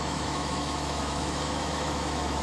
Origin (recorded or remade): remade